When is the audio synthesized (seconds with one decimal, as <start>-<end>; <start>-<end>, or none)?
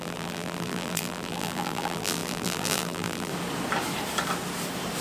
0.0-3.3